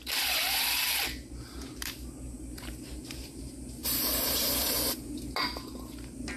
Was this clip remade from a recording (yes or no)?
yes